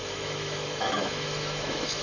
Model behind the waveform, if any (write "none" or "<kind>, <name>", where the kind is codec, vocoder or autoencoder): autoencoder, DAC-VAE